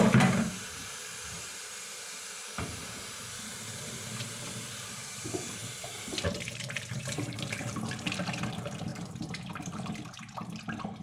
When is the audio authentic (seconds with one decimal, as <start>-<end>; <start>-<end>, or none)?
1.0-2.4

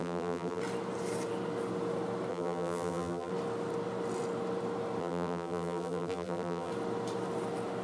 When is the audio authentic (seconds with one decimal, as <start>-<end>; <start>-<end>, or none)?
0.6-2.3; 3.3-5.0; 6.7-7.8

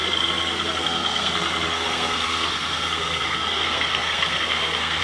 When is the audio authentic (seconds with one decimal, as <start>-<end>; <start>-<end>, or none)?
0.0-0.8

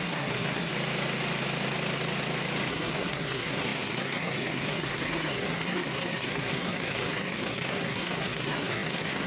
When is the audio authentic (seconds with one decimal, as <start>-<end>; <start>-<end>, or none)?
0.7-2.7

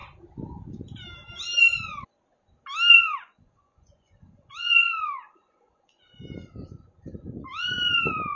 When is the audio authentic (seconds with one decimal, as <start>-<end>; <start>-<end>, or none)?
0.0-2.9; 6.2-7.4

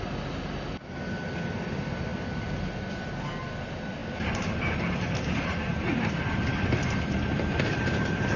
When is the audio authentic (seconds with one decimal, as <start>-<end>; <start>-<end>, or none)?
0.0-4.0; 4.8-5.7

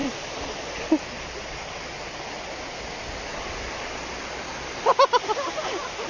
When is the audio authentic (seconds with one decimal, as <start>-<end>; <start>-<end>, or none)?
0.0-6.1